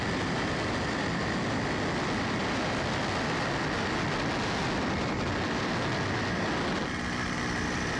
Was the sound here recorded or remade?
recorded